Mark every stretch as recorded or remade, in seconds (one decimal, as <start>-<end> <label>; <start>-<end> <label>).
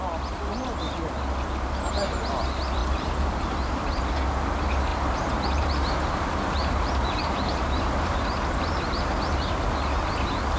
0.0-2.8 recorded; 2.8-4.1 remade; 4.1-4.9 recorded; 4.9-9.2 remade; 9.2-10.6 recorded